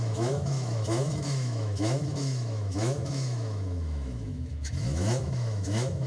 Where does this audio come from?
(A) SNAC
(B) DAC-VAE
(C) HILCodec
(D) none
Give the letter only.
B